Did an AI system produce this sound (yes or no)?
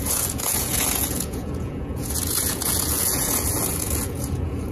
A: yes